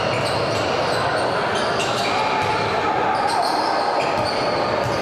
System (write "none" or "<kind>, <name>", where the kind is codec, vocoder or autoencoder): none